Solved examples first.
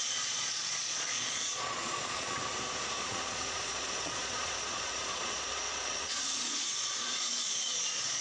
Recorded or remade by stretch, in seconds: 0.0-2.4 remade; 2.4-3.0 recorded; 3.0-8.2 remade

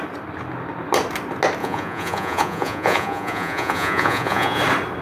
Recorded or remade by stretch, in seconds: 0.0-1.6 recorded; 1.6-4.6 remade; 4.6-5.0 recorded